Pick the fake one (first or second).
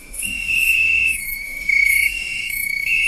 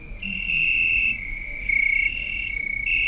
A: first